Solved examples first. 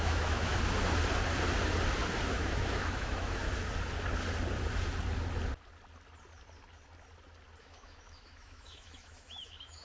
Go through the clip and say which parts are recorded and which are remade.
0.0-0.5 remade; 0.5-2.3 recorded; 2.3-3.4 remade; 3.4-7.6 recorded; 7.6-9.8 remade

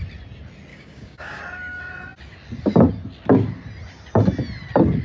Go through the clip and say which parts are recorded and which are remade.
0.0-0.7 recorded; 0.7-1.4 remade; 1.4-5.0 recorded